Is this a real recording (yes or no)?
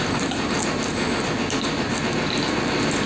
yes